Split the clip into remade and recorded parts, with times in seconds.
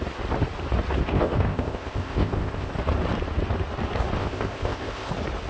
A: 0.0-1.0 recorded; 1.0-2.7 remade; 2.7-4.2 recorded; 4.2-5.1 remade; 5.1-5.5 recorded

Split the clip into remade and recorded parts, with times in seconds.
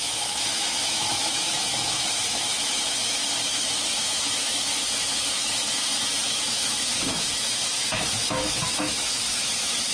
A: 0.0-9.9 remade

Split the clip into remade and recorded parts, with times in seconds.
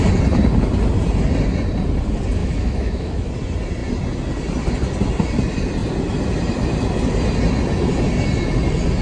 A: 0.0-2.4 recorded; 2.4-3.3 remade; 3.3-9.0 recorded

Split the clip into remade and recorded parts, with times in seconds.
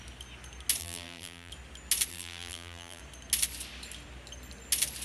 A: 0.0-0.8 recorded; 0.8-1.5 remade; 1.5-2.1 recorded; 2.1-3.0 remade; 3.0-5.0 recorded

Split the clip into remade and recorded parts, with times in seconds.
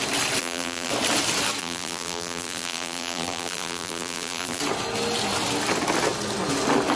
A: 0.0-0.4 recorded; 0.4-0.9 remade; 0.9-1.6 recorded; 1.6-4.6 remade; 4.6-7.0 recorded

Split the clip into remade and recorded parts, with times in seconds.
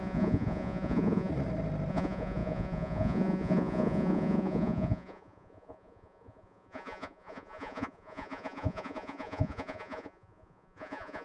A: 0.0-1.3 remade; 1.3-1.9 recorded; 1.9-11.2 remade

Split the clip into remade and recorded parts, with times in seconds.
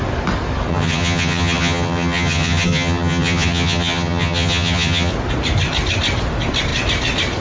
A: 0.0-0.7 recorded; 0.7-5.1 remade; 5.1-7.4 recorded